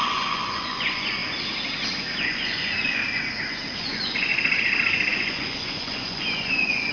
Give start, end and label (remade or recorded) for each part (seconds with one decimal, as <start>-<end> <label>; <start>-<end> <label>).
0.0-1.2 remade; 1.2-2.2 recorded; 2.2-3.0 remade; 3.0-3.8 recorded; 3.8-4.3 remade; 4.3-5.1 recorded; 5.1-6.9 remade